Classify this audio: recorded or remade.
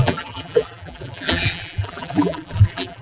remade